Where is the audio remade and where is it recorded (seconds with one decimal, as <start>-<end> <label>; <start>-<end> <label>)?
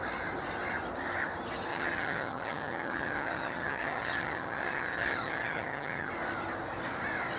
0.0-1.7 recorded; 1.7-6.1 remade; 6.1-7.4 recorded